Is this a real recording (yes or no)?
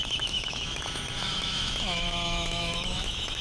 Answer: no